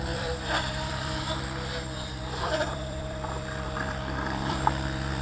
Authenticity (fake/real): fake